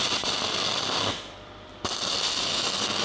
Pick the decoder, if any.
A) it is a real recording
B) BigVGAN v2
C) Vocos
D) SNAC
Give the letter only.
B